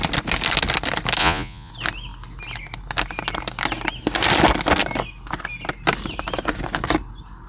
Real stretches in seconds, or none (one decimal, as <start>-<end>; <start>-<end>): 0.0-1.2; 1.7-7.5